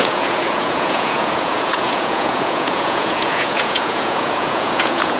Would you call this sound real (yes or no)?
no